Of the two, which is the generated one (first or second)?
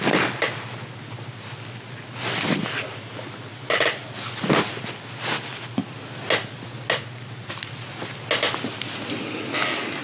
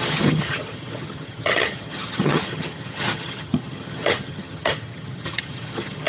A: second